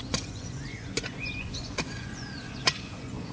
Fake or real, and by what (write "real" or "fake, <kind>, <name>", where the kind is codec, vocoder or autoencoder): fake, vocoder, Vocos